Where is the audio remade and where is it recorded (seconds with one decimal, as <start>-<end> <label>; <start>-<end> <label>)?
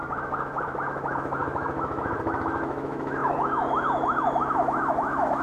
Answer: 0.0-5.4 remade